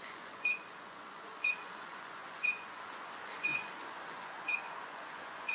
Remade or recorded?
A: remade